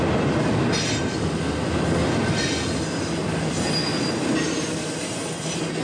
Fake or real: real